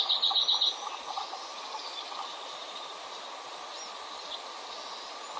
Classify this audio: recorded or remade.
recorded